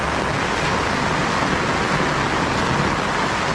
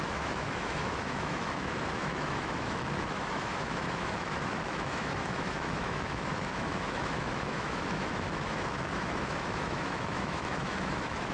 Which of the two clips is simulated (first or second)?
second